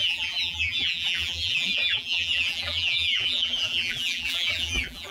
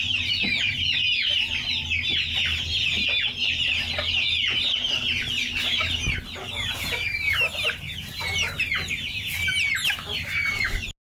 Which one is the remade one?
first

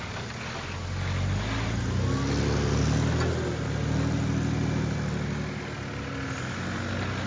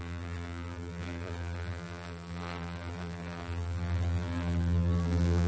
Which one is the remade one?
second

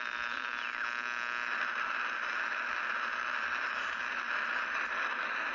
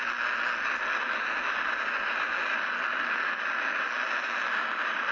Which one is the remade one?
first